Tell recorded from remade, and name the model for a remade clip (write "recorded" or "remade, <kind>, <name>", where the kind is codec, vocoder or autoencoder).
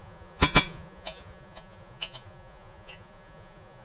remade, vocoder, Vocos